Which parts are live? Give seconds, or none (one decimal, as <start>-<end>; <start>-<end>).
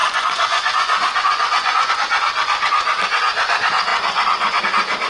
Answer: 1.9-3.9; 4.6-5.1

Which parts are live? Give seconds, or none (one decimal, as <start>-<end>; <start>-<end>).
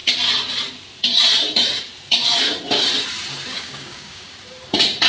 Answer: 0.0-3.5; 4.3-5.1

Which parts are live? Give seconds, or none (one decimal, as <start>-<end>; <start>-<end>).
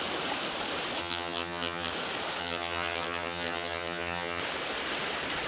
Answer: 0.0-1.0; 1.9-2.4; 4.4-5.5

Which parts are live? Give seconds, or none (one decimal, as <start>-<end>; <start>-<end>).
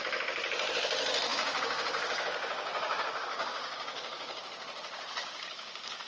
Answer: 0.0-1.3; 4.4-5.2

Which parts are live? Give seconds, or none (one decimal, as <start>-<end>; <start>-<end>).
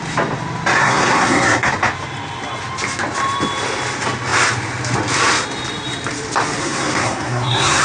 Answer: 0.0-0.8; 1.7-6.6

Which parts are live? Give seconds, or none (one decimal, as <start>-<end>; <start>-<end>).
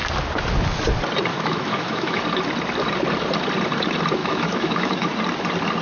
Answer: 0.0-1.3; 2.2-4.2; 5.1-5.8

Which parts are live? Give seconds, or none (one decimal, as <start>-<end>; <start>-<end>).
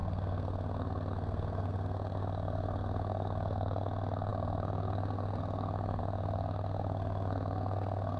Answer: none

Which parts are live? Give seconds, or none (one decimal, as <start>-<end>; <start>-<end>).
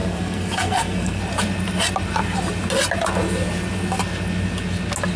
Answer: 1.2-5.2